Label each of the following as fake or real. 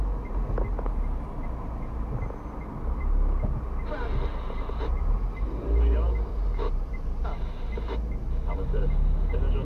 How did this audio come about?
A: real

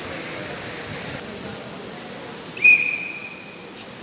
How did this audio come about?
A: real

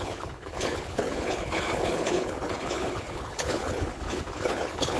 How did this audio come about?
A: fake